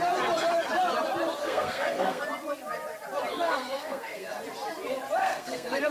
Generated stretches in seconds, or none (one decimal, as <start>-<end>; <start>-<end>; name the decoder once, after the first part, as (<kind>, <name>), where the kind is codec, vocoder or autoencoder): 1.4-2.2 (codec, SNAC); 3.3-4.3; 5.2-5.9